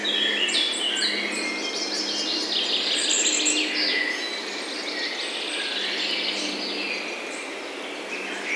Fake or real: real